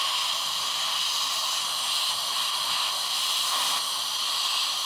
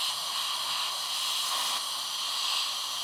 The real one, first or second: second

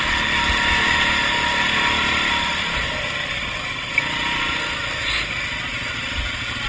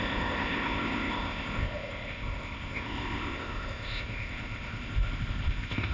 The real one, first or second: first